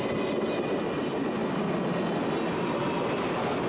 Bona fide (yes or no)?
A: yes